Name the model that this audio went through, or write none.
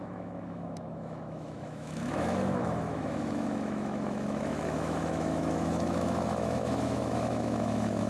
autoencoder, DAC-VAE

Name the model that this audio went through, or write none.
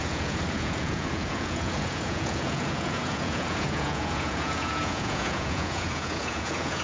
vocoder, Vocos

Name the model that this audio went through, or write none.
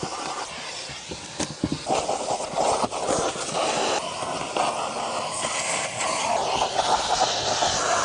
none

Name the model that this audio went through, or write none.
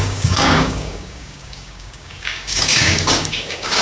codec, DAC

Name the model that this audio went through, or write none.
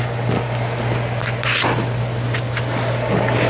none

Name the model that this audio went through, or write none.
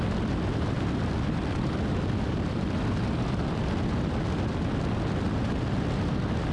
none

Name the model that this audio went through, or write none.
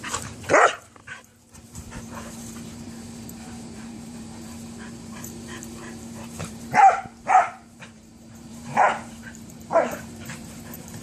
vocoder, BigVGAN v2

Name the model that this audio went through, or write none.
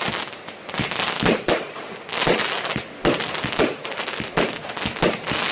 none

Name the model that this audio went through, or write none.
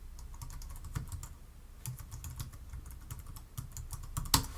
none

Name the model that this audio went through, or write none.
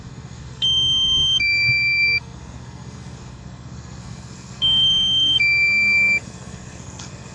codec, SNAC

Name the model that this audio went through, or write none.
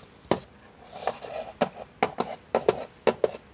none